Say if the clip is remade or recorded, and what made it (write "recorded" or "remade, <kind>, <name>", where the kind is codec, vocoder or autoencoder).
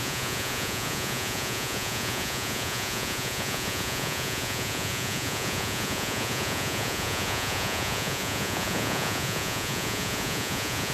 remade, vocoder, Vocos